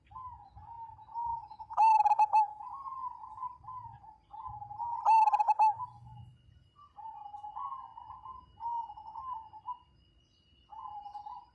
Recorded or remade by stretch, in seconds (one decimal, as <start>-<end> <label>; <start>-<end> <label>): 0.0-1.3 recorded; 1.3-2.1 remade; 2.1-11.5 recorded